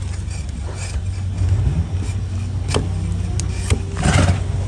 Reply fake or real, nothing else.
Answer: real